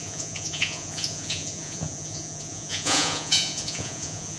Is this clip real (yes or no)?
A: no